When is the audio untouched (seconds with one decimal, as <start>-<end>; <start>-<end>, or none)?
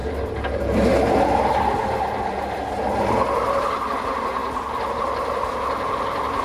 2.6-3.9; 4.4-5.0